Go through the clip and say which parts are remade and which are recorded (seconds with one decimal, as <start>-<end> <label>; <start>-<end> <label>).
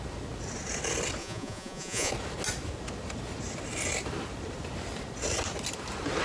0.0-1.2 recorded; 1.2-2.1 remade; 2.1-6.2 recorded